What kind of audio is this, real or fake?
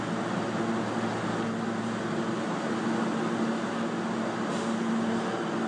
real